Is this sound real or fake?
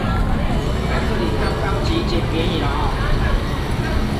real